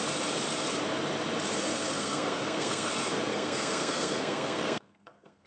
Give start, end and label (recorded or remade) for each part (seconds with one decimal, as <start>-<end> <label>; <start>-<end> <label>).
0.0-1.7 recorded; 1.7-2.9 remade; 2.9-3.3 recorded; 3.3-5.5 remade